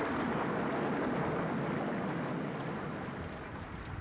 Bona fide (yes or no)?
yes